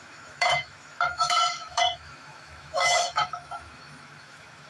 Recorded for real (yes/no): no